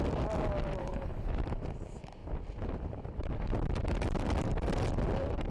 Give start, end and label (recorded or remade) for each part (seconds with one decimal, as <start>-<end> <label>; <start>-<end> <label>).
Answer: 0.0-0.8 recorded; 0.8-1.3 remade; 1.3-5.5 recorded